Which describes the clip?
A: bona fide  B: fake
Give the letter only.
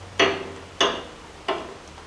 A